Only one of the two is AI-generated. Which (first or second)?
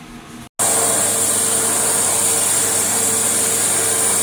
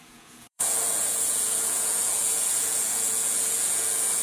second